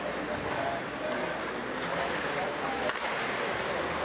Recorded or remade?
recorded